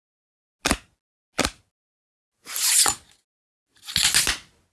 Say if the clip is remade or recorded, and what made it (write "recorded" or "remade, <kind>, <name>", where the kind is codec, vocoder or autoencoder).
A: recorded